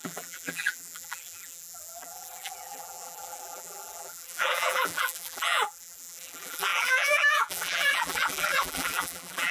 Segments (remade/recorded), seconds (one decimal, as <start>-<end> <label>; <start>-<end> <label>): 0.0-9.5 remade